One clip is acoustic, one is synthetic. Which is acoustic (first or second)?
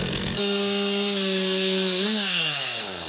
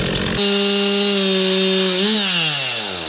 second